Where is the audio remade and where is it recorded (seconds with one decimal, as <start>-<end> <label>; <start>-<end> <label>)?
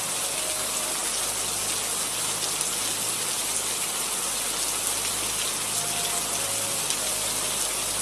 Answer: 0.0-8.0 recorded